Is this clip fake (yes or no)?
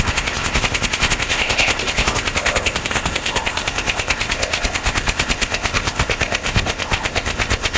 yes